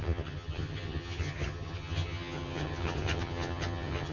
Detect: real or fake fake